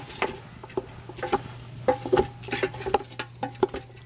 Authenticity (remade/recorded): recorded